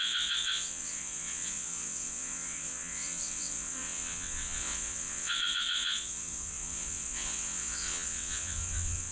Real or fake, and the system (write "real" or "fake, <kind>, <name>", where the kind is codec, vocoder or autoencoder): fake, vocoder, WaveNeXt